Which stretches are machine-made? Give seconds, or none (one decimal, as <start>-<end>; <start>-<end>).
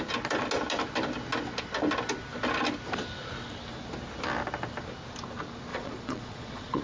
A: 5.7-6.8